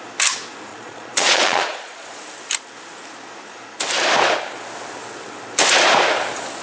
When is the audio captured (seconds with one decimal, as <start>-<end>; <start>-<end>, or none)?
0.0-0.7; 2.2-6.6